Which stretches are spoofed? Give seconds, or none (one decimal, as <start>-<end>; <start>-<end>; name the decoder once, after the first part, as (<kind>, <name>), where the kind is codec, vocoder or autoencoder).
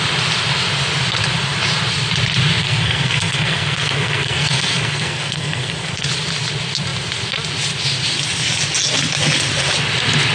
2.6-6.1 (codec, SNAC)